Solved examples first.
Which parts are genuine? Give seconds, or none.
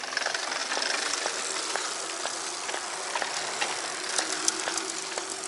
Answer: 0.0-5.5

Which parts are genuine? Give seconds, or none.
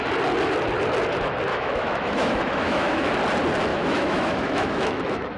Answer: 0.0-1.5; 3.1-3.7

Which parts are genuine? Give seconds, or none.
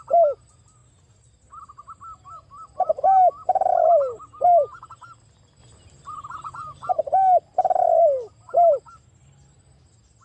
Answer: 0.0-5.6; 6.9-7.5; 9.1-10.2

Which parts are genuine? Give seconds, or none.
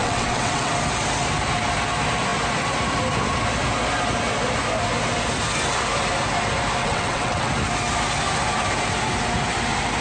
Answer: 0.7-6.8; 7.5-10.0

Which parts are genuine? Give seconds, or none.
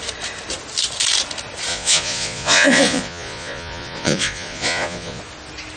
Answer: 0.0-1.7; 5.2-5.8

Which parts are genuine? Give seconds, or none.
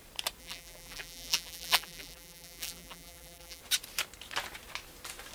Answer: 0.0-0.4; 3.6-5.3